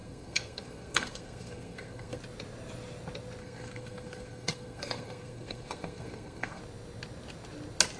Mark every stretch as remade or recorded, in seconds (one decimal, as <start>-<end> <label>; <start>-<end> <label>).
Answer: 0.0-2.2 remade; 2.2-3.4 recorded; 3.4-6.6 remade; 6.6-8.0 recorded